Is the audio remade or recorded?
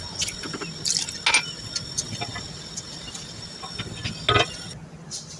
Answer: recorded